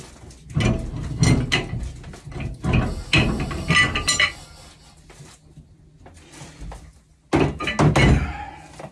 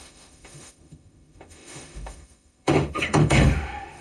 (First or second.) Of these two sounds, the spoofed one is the second